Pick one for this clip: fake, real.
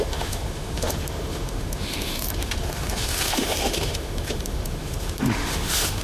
fake